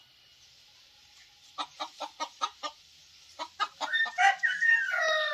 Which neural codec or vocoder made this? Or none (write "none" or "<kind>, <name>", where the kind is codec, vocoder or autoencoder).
none